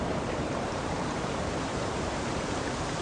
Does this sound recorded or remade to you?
remade